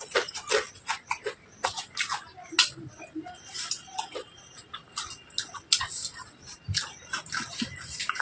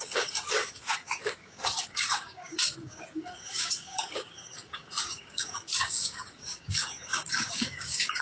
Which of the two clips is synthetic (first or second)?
second